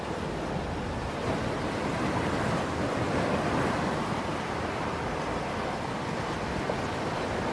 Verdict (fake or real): real